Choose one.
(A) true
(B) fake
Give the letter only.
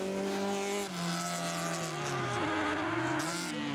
A